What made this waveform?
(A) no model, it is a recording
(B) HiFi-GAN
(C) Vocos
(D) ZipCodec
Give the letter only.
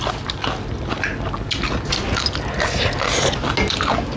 A